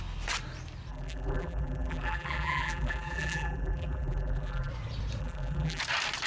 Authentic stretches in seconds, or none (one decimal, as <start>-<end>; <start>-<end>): 0.0-0.9; 4.7-5.2; 5.8-6.3